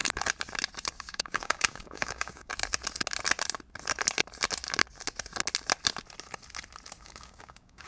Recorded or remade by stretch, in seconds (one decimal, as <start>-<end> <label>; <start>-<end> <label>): 0.0-0.9 recorded; 0.9-2.5 remade; 2.5-7.0 recorded; 7.0-7.9 remade